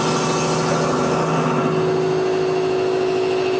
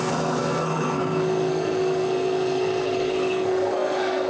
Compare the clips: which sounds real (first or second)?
first